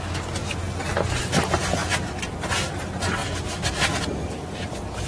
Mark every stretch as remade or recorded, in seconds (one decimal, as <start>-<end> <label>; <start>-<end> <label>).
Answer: 0.0-1.8 recorded; 1.8-2.5 remade; 2.5-5.1 recorded